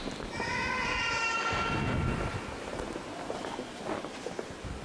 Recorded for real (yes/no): yes